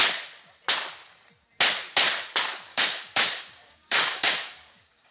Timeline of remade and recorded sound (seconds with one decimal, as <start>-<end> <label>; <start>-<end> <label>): 0.0-2.7 recorded; 2.7-5.1 remade